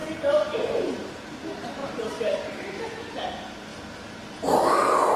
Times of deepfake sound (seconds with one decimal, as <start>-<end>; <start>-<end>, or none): 0.0-1.2; 1.8-2.7